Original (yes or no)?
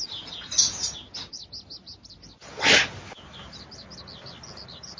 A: yes